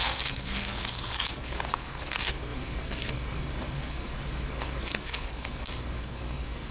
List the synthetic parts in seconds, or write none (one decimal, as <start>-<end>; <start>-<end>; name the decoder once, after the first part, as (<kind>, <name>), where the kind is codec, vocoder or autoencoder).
0.0-6.7 (codec, SNAC)